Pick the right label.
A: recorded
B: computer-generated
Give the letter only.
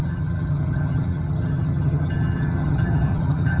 B